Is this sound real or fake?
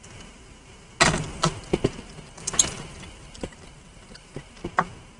real